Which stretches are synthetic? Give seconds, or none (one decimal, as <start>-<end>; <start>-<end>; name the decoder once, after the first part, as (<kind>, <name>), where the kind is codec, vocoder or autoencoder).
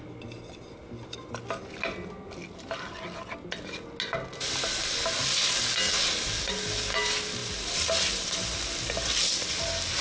none